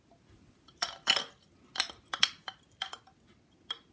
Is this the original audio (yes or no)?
yes